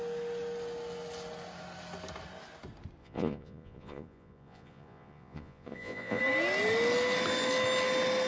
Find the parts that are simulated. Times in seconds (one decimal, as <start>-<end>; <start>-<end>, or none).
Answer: 3.0-6.2